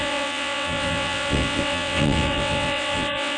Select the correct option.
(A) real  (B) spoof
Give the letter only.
B